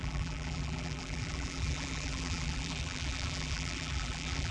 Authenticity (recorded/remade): remade